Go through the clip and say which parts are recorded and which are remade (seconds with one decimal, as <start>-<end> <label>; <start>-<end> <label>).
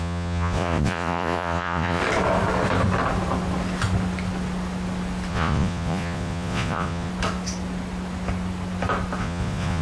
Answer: 0.0-2.0 remade; 2.0-5.3 recorded; 5.3-7.1 remade; 7.1-9.2 recorded; 9.2-9.8 remade